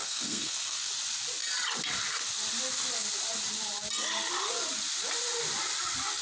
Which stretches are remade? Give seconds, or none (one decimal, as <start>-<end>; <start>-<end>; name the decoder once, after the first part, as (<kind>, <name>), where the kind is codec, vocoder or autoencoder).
0.0-0.9 (codec, SNAC)